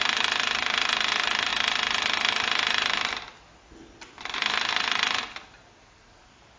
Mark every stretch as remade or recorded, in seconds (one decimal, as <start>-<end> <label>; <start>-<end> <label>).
0.0-6.6 recorded

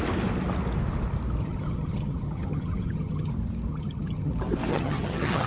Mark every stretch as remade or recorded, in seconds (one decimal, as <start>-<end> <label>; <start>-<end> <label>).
0.0-1.4 recorded; 1.4-3.3 remade; 3.3-3.7 recorded; 3.7-4.3 remade; 4.3-4.7 recorded; 4.7-5.5 remade

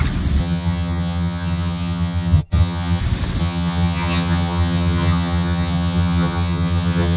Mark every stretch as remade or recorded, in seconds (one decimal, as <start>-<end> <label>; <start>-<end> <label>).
0.0-0.4 recorded; 0.4-3.0 remade; 3.0-3.4 recorded; 3.4-7.2 remade

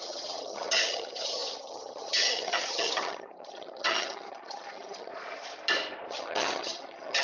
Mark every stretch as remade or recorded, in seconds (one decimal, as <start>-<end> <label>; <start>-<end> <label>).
0.0-5.1 remade; 5.1-6.1 recorded; 6.1-7.2 remade